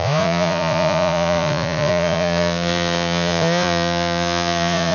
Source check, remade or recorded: remade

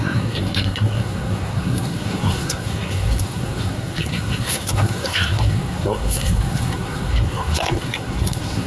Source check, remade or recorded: remade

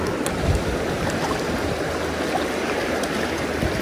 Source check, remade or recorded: recorded